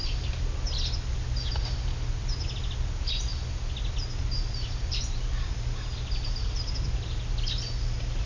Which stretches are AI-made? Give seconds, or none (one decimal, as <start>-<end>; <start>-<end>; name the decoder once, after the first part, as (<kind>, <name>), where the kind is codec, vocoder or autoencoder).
none

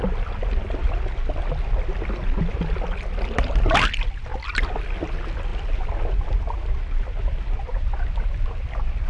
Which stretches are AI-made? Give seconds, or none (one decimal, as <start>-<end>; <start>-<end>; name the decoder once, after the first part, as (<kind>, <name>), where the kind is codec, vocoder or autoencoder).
none

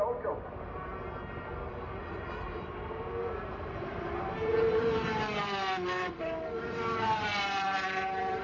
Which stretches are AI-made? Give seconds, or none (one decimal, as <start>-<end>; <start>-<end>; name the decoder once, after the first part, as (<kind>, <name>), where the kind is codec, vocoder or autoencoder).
0.0-0.9 (vocoder, BigVGAN v2); 1.7-8.4

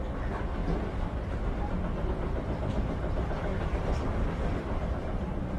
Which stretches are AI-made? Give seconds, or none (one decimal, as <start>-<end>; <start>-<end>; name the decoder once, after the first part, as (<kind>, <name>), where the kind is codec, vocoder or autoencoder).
3.5-5.6 (vocoder, BigVGAN v2)

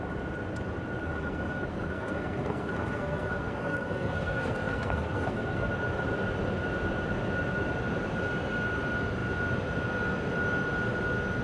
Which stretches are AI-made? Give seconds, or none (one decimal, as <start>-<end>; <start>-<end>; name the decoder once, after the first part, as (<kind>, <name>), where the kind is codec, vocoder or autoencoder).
1.0-5.7 (codec, SNAC)

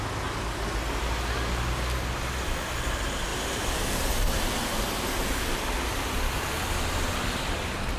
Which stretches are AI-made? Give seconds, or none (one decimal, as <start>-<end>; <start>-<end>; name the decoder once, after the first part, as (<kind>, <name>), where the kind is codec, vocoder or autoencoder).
4.7-7.5 (vocoder, BigVGAN v2)

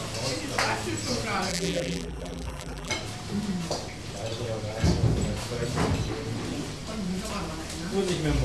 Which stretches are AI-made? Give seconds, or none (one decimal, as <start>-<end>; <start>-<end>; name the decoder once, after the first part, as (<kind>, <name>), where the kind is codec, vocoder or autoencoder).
1.5-2.9 (vocoder, BigVGAN v2)

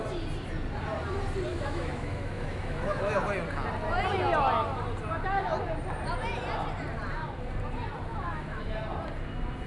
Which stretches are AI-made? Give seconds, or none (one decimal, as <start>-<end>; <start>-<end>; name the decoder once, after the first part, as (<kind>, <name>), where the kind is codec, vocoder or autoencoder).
1.5-3.1 (autoencoder, DAC-VAE); 8.1-8.6